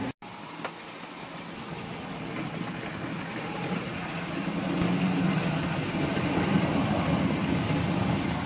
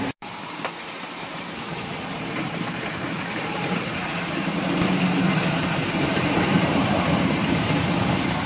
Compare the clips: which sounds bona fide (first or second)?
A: first